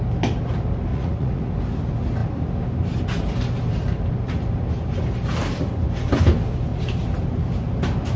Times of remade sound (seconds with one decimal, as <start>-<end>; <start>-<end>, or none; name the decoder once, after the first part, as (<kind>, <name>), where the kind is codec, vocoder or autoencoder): 0.9-1.5 (vocoder, Vocos)

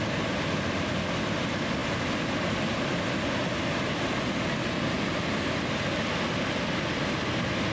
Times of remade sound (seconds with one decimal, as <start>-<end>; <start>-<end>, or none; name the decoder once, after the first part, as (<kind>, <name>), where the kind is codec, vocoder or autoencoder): none

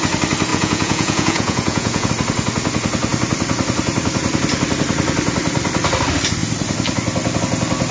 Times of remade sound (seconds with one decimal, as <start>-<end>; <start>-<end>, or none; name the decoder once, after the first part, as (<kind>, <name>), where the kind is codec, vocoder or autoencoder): 0.5-2.1 (vocoder, Vocos)